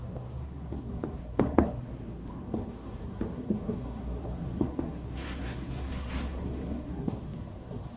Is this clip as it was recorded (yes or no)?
no